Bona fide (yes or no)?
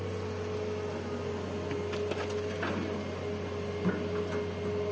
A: yes